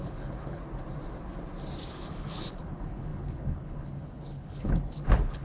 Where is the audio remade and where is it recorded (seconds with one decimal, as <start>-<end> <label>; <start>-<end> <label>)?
0.0-0.6 remade; 0.6-1.9 recorded; 1.9-5.4 remade